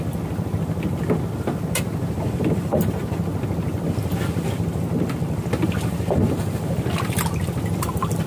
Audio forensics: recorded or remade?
recorded